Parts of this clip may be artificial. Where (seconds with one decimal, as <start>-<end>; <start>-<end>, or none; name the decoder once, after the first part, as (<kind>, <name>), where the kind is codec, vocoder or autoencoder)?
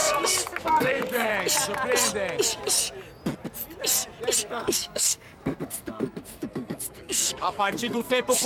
0.0-1.3 (codec, SNAC); 4.4-8.5